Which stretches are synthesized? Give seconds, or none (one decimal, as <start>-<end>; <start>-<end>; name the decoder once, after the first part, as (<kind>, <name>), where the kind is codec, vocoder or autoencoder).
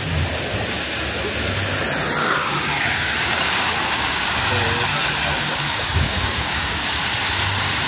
2.2-4.5 (codec, DAC); 5.5-7.0